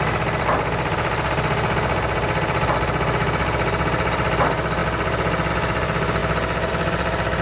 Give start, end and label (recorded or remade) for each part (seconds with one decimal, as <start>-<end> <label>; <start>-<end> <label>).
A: 0.0-7.4 recorded